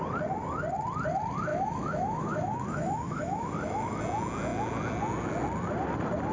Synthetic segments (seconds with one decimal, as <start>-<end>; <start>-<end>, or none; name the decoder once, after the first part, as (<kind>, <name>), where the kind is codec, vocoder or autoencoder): 1.5-4.0 (autoencoder, DAC-VAE)